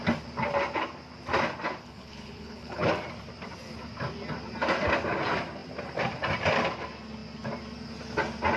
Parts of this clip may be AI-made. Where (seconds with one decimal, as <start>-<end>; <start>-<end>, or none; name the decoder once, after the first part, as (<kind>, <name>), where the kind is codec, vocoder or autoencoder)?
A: 1.8-2.9 (codec, HILCodec)